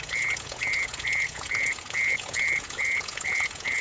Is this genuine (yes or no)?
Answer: no